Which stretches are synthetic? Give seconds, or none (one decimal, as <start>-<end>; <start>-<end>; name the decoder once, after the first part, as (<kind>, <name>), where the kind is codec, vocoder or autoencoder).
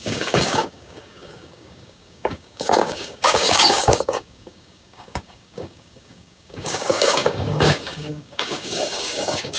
0.0-9.6 (codec, DAC)